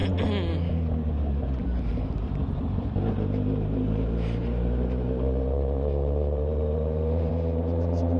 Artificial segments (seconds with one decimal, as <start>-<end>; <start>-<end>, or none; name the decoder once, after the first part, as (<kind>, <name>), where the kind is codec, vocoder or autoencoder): 1.9-8.2 (vocoder, BigVGAN v2)